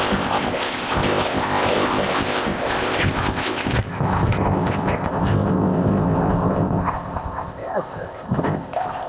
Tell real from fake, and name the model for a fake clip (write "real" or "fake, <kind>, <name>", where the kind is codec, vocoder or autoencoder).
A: fake, codec, ZipCodec